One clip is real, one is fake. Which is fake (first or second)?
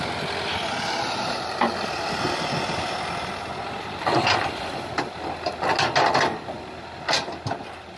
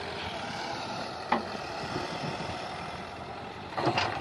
second